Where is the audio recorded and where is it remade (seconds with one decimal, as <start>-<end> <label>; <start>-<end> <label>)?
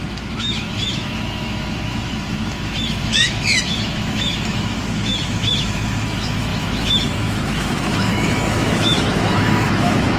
0.0-10.2 remade